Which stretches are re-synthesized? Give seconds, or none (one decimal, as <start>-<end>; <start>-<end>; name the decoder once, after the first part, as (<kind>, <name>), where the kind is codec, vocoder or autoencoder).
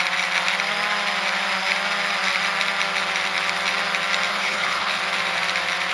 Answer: 4.3-5.0 (codec, HILCodec)